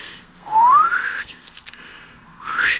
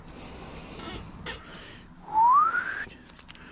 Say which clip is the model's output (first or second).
first